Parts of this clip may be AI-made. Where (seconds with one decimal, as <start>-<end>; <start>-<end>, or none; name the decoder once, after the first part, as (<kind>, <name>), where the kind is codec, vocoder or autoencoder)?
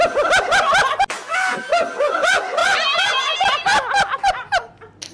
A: none